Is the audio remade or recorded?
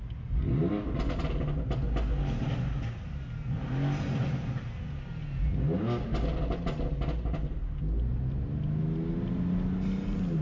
recorded